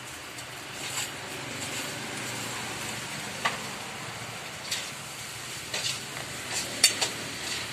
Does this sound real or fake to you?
fake